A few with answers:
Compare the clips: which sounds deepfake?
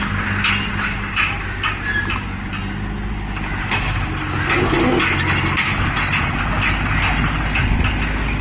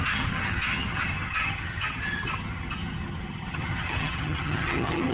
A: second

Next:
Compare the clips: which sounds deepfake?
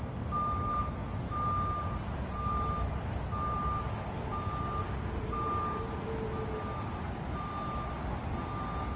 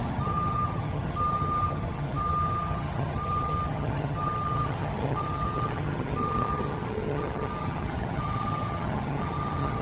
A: second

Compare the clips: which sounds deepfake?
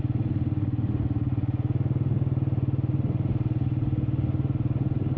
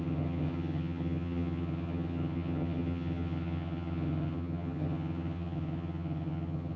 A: second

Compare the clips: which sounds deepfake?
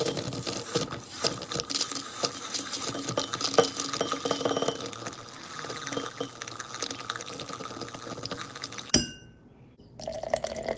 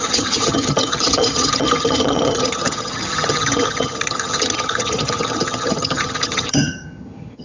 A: second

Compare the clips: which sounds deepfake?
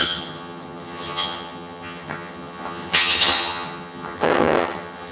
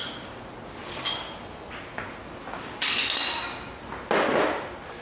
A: first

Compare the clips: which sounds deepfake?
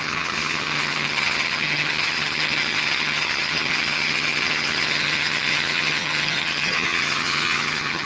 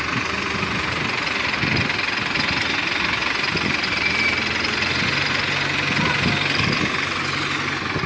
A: first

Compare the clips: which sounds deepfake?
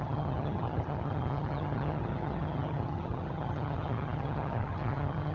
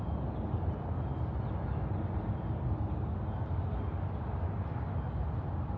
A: first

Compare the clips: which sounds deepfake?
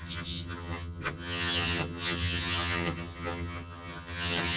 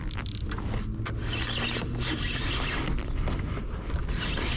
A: first